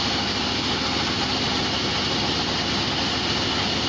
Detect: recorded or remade recorded